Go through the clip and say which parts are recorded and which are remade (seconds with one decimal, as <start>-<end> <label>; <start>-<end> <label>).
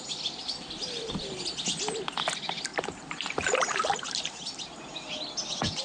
0.0-2.7 recorded; 2.7-4.2 remade; 4.2-5.8 recorded